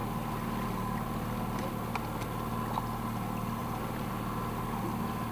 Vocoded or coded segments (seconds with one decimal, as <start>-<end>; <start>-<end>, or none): 3.6-4.1